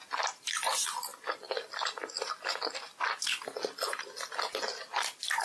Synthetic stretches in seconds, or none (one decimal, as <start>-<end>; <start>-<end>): none